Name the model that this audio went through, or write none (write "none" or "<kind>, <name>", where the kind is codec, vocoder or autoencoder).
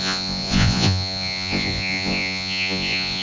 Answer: vocoder, Vocos